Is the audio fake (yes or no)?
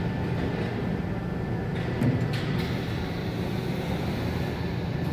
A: no